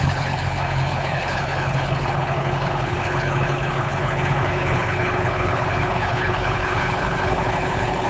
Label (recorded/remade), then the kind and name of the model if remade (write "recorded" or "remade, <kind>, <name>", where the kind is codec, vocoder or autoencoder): remade, codec, HILCodec